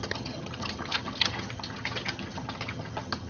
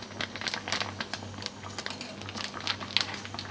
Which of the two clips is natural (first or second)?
second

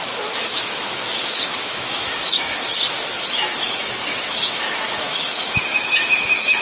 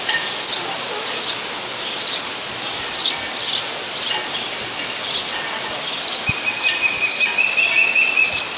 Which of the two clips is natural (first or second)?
second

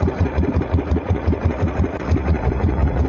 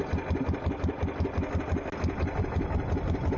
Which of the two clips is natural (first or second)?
second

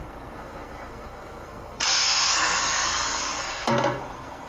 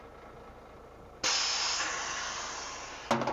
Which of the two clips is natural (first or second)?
second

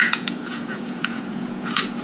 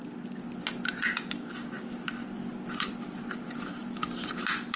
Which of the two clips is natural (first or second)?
second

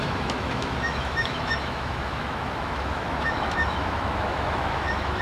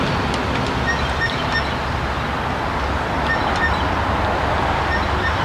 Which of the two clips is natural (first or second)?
second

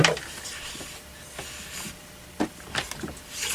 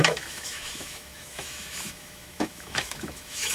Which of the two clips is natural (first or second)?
first